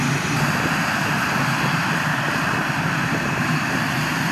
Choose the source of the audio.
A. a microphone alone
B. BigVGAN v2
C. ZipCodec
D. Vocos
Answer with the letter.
A